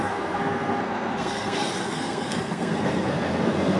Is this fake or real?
fake